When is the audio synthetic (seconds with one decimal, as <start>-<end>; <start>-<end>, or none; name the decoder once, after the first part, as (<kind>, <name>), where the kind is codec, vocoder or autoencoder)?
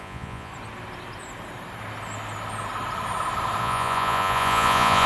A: 0.0-0.5 (vocoder, Vocos); 3.6-5.1